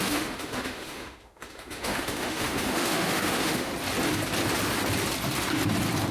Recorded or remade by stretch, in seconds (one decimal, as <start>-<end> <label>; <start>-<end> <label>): 0.0-3.7 remade; 3.7-6.1 recorded